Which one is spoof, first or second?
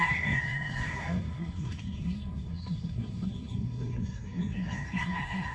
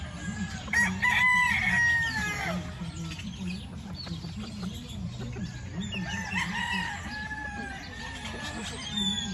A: first